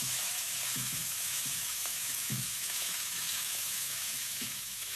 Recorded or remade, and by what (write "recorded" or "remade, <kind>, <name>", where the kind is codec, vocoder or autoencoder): remade, autoencoder, DAC-VAE